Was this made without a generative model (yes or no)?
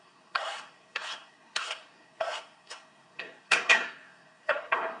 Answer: no